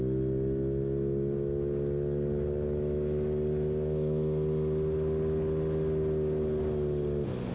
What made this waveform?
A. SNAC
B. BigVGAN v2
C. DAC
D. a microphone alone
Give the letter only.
D